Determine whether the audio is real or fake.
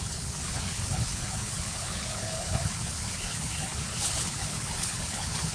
fake